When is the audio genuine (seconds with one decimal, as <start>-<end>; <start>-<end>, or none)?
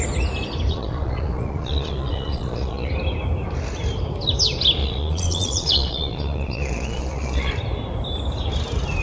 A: 0.0-0.7; 2.9-4.8; 7.5-9.0